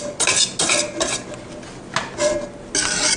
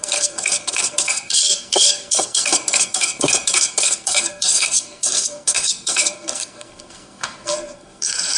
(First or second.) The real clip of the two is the first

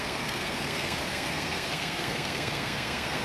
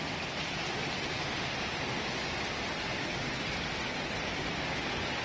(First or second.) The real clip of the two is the second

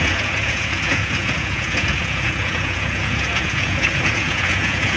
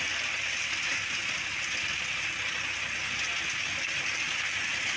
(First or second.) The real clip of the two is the second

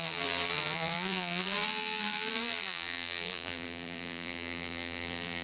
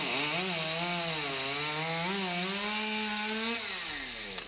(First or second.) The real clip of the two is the second